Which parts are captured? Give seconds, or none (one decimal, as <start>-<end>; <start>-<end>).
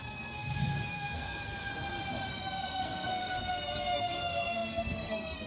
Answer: 1.7-2.3